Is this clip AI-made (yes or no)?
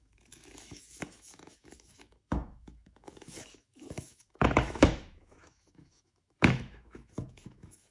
yes